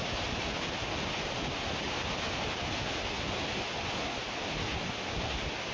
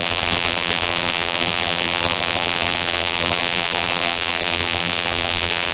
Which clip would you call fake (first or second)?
second